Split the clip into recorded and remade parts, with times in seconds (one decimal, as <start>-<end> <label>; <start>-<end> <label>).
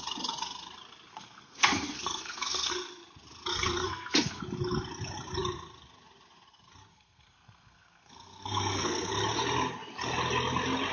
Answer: 0.0-1.1 recorded; 1.1-2.7 remade; 2.7-3.5 recorded; 3.5-4.4 remade; 4.4-6.9 recorded; 6.9-9.1 remade; 9.1-10.9 recorded